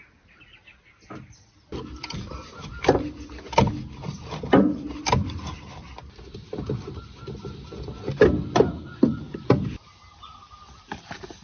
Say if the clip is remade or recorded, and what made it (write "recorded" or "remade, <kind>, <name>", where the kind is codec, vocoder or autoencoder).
recorded